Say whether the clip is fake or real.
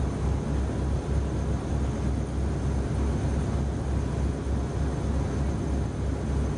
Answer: real